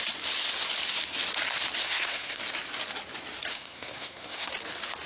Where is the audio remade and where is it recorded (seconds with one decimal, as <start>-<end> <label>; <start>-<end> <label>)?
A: 0.0-1.8 recorded; 1.8-2.4 remade; 2.4-3.5 recorded; 3.5-4.5 remade; 4.5-5.1 recorded